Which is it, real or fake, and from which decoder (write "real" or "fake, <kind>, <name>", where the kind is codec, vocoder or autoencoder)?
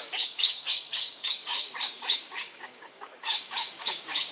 fake, codec, DAC